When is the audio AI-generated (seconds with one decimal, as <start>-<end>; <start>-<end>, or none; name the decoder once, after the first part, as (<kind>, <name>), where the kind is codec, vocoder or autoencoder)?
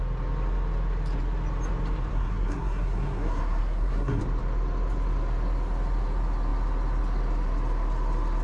2.1-4.2 (codec, SNAC)